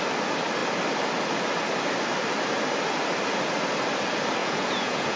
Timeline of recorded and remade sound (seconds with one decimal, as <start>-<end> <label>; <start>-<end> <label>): 0.0-4.4 recorded; 4.4-5.2 remade